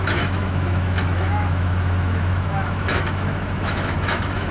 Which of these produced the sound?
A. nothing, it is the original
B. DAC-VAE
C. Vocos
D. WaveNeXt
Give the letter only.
B